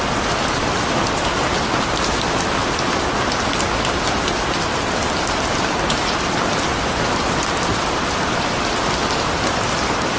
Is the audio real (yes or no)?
yes